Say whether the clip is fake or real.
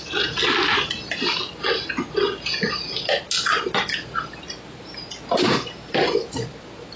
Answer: real